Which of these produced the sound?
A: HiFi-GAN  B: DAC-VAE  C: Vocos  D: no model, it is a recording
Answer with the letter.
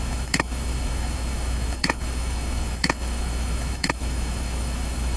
B